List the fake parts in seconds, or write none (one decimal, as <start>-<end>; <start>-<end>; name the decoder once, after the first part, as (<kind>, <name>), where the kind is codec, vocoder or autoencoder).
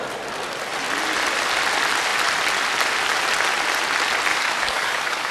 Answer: 4.3-5.3 (codec, DAC)